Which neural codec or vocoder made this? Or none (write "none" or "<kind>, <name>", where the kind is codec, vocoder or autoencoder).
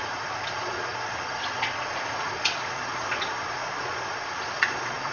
vocoder, Vocos